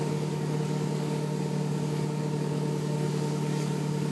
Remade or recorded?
remade